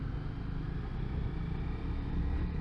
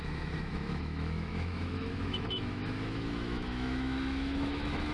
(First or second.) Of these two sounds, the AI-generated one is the second